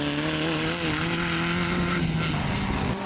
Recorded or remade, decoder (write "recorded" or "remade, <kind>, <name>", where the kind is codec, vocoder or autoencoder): recorded